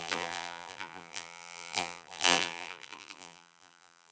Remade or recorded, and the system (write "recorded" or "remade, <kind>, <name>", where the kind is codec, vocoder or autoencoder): remade, vocoder, BigVGAN v2